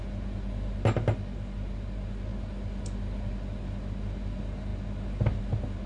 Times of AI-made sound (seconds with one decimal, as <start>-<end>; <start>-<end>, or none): none